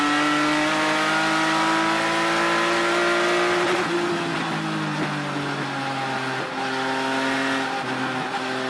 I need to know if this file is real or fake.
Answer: real